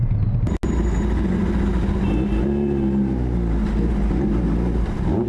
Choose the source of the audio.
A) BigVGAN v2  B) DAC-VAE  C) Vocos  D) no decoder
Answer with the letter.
D